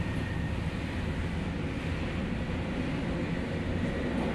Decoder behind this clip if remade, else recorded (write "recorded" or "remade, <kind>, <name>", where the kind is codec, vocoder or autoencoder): recorded